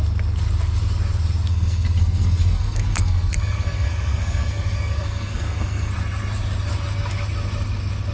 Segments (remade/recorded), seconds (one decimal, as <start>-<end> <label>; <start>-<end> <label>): 0.0-1.5 recorded; 1.5-5.9 remade; 5.9-8.1 recorded